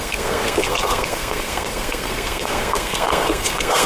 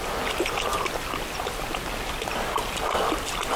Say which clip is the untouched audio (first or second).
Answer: second